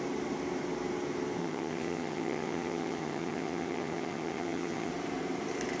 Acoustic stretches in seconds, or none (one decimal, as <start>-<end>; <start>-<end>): 0.0-1.4; 4.9-5.8